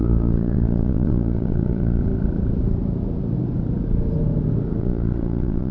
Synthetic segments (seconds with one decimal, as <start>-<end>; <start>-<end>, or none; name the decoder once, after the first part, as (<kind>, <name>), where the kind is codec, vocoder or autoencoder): 0.0-2.0 (vocoder, Vocos); 4.8-5.7